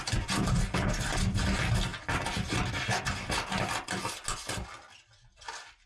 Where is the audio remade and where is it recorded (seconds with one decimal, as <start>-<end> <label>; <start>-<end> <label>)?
0.0-5.9 recorded